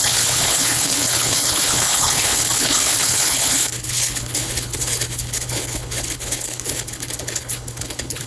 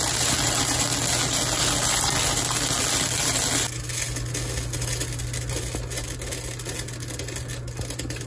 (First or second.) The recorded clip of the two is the second